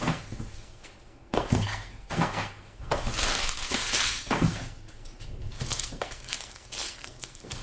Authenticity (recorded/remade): remade